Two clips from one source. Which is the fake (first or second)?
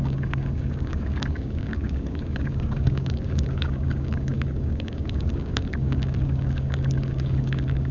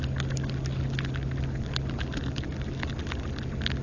first